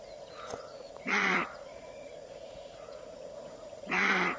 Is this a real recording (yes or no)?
no